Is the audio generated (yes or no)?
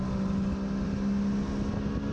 no